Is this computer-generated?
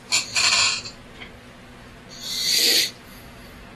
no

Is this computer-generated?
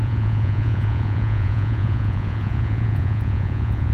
yes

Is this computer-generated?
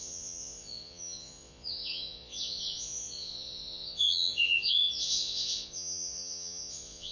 yes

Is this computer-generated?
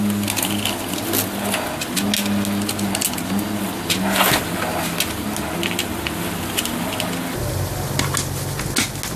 no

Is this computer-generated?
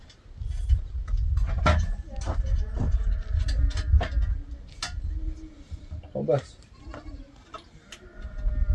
no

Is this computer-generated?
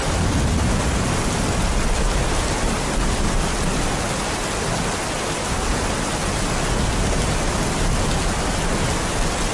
no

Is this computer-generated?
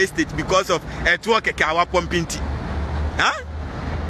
no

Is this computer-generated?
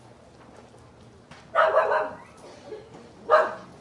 no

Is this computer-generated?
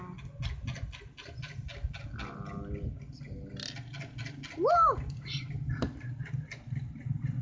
no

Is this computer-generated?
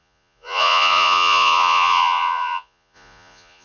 yes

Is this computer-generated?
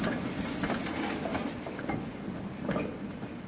no